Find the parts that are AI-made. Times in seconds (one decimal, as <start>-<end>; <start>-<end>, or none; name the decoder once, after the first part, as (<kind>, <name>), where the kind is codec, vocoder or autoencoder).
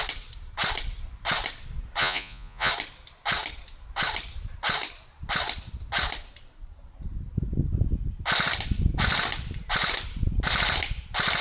2.0-2.7 (vocoder, Vocos)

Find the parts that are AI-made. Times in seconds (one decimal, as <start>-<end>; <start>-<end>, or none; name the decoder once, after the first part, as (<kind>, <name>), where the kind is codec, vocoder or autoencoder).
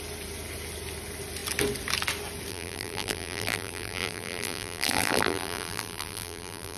2.5-6.8 (vocoder, BigVGAN v2)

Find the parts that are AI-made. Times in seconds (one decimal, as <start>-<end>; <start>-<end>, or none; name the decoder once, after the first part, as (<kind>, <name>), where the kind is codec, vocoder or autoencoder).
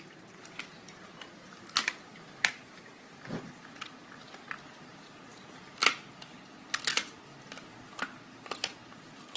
none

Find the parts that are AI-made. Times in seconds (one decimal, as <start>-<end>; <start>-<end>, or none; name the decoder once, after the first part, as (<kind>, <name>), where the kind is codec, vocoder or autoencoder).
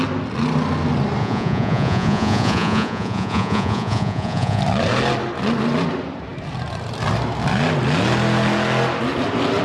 1.2-4.6 (vocoder, Vocos)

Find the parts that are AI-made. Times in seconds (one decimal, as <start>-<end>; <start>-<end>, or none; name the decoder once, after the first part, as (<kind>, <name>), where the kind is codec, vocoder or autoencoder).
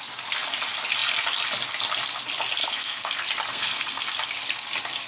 2.6-3.1 (codec, SNAC); 3.5-4.0